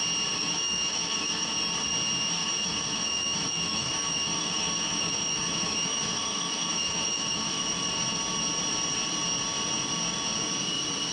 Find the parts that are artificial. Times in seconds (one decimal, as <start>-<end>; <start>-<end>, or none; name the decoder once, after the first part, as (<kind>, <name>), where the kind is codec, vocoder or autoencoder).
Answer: 0.4-1.5 (autoencoder, DAC-VAE); 2.4-7.6